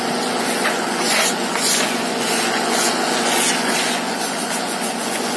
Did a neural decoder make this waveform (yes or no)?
yes